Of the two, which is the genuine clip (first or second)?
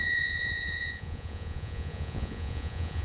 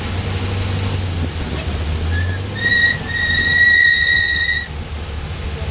second